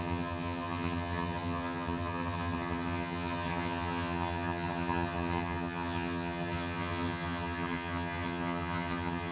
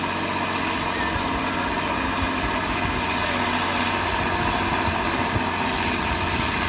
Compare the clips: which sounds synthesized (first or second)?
first